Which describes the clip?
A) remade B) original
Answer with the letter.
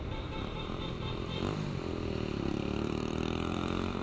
A